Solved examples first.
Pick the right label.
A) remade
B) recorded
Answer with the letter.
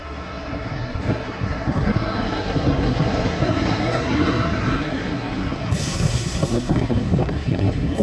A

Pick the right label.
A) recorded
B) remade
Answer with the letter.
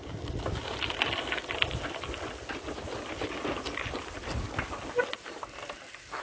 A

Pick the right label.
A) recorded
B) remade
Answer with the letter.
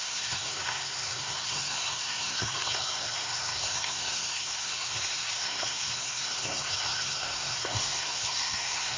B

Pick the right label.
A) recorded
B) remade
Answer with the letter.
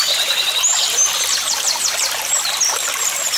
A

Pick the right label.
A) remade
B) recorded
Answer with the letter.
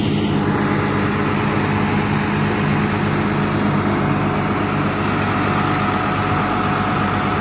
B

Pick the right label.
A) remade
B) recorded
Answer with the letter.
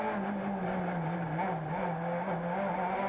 B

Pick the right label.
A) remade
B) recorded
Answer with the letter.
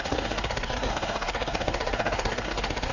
A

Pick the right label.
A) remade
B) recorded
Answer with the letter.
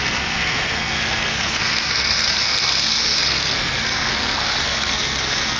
A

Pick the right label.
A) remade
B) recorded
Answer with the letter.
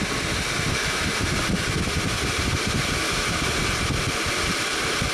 B